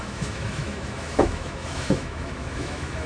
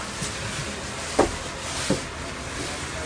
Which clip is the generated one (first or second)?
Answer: first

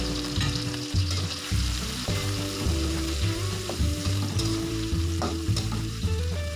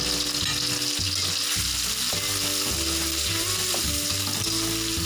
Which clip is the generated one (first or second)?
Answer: first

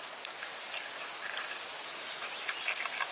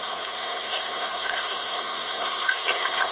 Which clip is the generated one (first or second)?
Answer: second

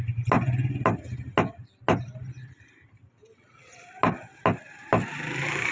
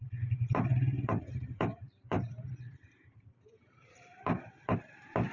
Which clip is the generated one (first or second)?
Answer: second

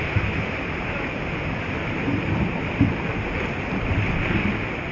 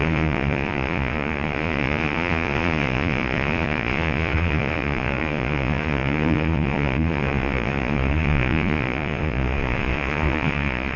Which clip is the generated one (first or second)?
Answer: second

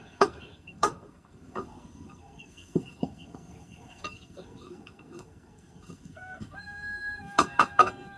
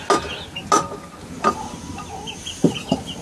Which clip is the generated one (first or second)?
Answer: first